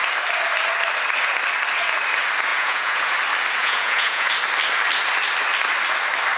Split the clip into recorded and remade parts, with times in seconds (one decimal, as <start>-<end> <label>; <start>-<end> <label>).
0.0-2.5 recorded; 2.5-3.1 remade; 3.1-3.6 recorded; 3.6-4.3 remade; 4.3-6.4 recorded